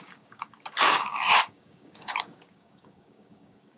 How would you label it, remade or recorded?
remade